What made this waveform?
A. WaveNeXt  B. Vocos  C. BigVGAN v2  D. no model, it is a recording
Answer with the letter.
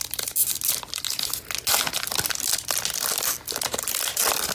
D